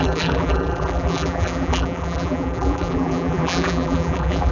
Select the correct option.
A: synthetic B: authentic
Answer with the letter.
A